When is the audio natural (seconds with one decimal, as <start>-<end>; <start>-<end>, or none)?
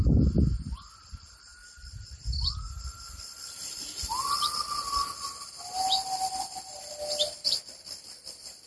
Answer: 0.0-8.7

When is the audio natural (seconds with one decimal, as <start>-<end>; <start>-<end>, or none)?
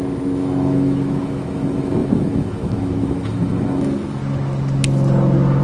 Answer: 4.2-5.6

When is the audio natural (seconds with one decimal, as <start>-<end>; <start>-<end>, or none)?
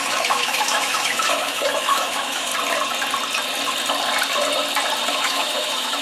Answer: 2.5-5.1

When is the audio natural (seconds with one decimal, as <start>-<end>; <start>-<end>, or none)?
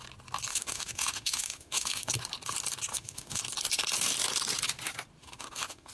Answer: 0.0-0.5; 2.1-2.9; 3.4-5.2